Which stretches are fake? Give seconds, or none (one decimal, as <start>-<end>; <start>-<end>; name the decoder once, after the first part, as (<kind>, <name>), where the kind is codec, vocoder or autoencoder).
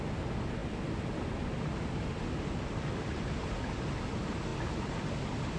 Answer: none